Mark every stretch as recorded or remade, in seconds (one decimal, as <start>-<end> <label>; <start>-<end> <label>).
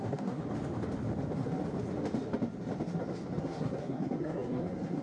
0.0-0.4 remade; 0.4-3.4 recorded; 3.4-5.0 remade